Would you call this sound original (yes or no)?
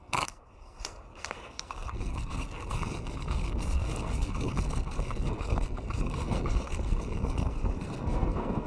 no